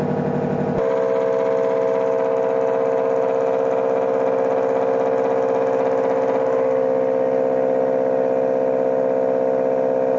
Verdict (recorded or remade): recorded